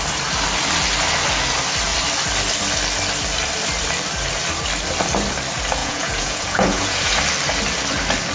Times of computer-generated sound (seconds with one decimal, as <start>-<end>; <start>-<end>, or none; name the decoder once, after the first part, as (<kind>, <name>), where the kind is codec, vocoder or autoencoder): 5.8-7.2 (vocoder, Vocos)